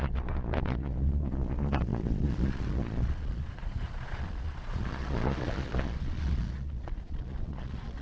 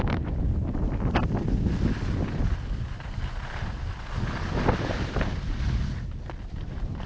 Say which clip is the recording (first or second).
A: second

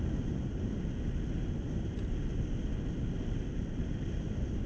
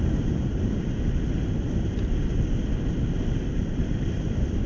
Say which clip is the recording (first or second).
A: first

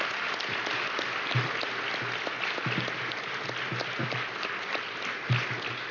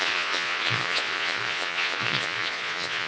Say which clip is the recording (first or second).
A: first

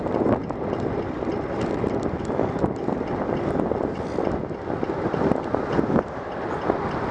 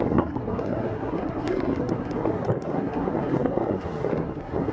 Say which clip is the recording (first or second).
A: first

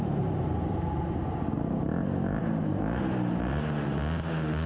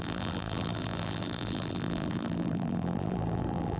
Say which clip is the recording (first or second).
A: first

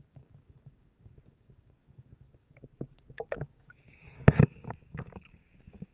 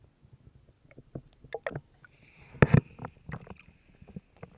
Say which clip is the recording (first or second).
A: second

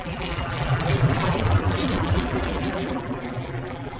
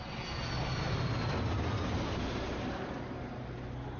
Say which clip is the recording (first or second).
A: second